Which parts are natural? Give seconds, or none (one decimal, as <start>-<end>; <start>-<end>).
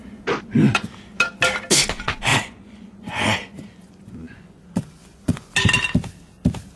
0.0-2.3; 4.6-5.0; 5.5-6.8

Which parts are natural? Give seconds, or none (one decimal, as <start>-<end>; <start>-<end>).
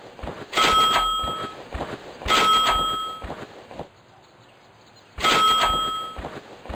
0.0-1.4; 2.3-6.7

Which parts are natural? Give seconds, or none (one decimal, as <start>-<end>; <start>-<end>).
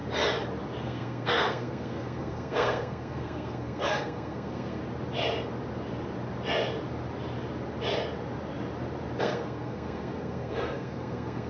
0.0-0.8; 4.8-9.2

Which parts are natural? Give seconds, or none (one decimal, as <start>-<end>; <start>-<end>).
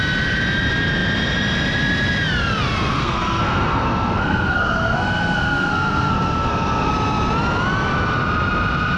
0.0-2.9; 6.9-9.0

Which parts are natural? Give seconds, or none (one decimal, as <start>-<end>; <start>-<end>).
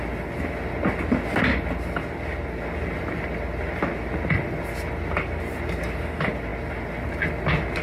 0.0-7.8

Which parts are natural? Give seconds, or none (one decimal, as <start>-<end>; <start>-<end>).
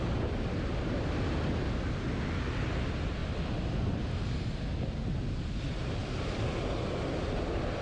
0.0-3.2; 4.3-6.0